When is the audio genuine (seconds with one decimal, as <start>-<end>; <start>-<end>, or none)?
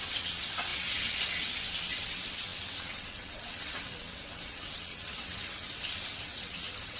none